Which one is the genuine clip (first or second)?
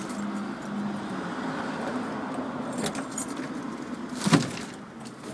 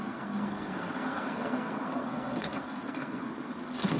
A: first